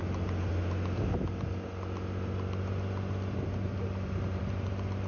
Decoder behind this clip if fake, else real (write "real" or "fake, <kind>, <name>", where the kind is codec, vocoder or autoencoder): real